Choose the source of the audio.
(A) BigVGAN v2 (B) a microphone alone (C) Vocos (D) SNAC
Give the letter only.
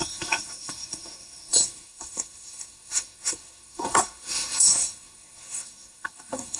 D